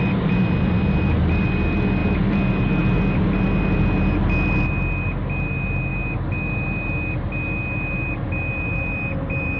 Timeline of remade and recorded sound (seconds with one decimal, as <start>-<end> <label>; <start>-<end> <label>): 0.0-9.6 recorded